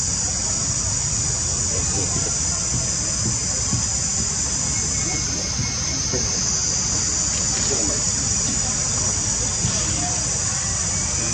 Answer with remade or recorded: recorded